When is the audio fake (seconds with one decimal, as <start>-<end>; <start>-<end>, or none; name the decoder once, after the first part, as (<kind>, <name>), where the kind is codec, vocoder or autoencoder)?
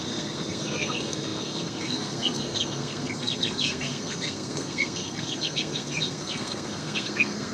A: 0.0-7.5 (codec, SNAC)